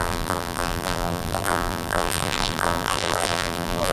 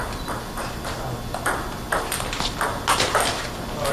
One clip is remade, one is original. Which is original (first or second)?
second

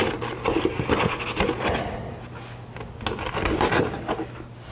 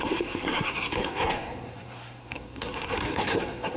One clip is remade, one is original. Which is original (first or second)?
first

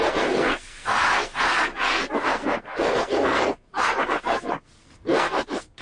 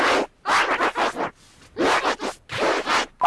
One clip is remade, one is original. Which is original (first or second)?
second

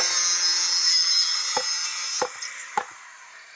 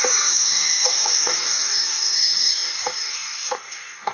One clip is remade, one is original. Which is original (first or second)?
first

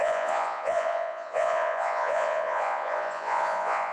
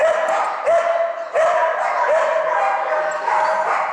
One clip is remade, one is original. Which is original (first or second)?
second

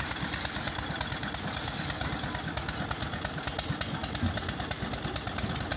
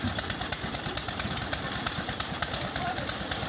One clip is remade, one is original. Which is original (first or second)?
first